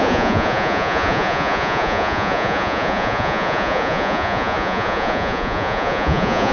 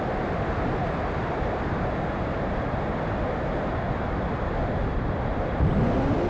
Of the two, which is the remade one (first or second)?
first